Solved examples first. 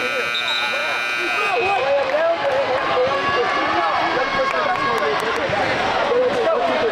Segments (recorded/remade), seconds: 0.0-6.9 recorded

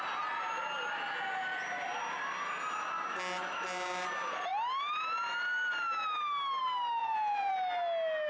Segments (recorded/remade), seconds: 0.0-7.0 recorded; 7.0-7.5 remade; 7.5-8.3 recorded